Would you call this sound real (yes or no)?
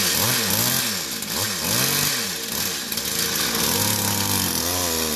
yes